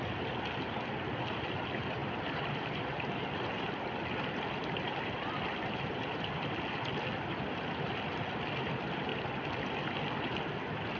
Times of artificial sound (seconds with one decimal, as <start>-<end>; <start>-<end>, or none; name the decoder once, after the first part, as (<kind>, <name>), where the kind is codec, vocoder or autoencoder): 2.0-5.7 (vocoder, BigVGAN v2); 9.1-10.1